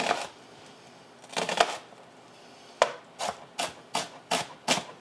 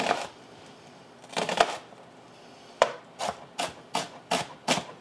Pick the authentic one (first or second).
first